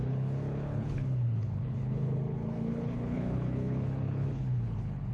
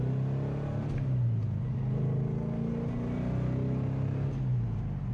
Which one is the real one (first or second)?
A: second